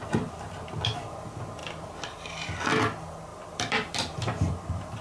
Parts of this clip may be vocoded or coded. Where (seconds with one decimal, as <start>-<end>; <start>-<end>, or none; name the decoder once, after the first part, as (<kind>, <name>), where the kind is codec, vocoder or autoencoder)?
3.3-5.0 (vocoder, BigVGAN v2)